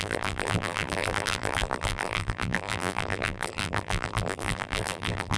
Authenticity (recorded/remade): remade